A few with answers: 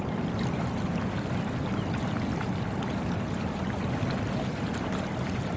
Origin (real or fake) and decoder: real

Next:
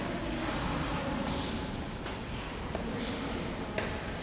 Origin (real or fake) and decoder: real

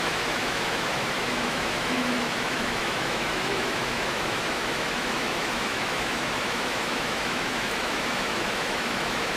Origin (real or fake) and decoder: fake, autoencoder, DAC-VAE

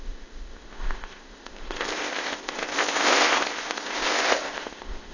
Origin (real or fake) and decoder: fake, codec, ZipCodec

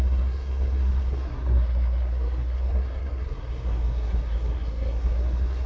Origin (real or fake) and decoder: fake, codec, SNAC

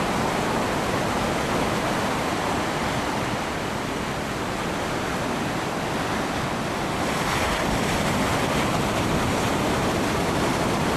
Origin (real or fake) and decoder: real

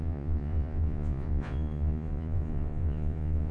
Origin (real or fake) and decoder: fake, vocoder, Vocos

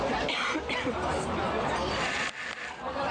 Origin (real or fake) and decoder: real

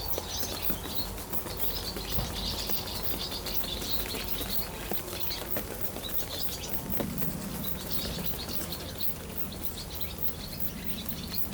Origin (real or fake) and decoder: real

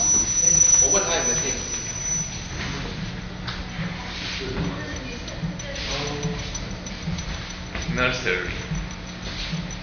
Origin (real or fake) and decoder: real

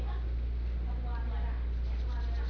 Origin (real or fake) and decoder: real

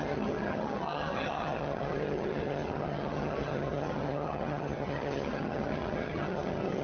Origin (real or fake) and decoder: fake, vocoder, HiFi-GAN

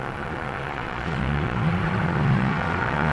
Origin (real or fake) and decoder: fake, vocoder, Vocos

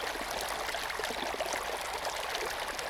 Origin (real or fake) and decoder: real